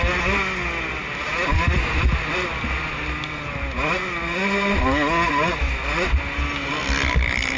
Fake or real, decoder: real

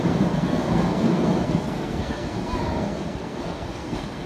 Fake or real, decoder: fake, codec, SNAC